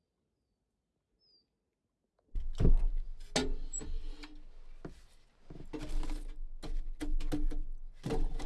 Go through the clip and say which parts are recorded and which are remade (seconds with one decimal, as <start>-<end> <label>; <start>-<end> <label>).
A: 0.0-8.5 recorded